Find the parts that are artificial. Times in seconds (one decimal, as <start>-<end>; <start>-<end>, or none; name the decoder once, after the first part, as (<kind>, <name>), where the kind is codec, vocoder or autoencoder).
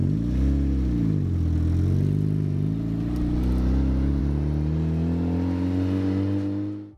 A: none